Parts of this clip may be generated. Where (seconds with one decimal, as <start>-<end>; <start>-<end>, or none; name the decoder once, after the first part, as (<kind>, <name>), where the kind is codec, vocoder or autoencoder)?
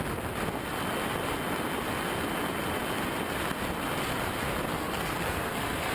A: 4.7-5.9 (codec, SNAC)